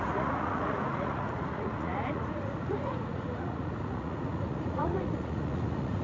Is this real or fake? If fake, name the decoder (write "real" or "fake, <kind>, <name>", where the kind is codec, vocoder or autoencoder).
fake, vocoder, Vocos